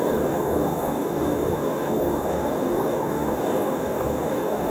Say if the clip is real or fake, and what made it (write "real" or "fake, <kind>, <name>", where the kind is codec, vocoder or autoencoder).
fake, codec, DAC